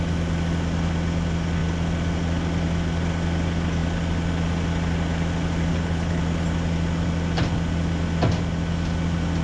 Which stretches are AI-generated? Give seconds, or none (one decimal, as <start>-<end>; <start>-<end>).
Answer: 5.7-6.2